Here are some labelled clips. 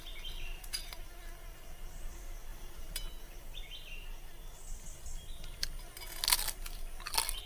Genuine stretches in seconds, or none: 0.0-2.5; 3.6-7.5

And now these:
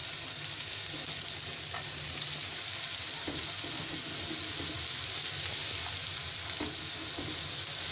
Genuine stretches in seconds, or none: 0.0-7.9

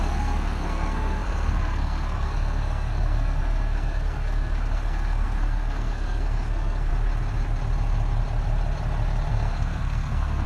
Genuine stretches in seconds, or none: 6.9-9.3